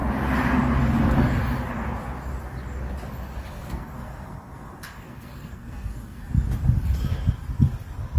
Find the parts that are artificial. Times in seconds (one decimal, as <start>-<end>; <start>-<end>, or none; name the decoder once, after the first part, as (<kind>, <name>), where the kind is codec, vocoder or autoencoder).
3.5-6.3 (codec, SNAC)